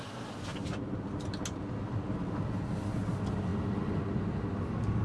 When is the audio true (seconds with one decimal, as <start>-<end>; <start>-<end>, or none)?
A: 0.0-5.0